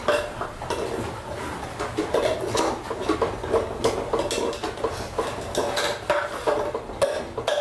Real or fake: real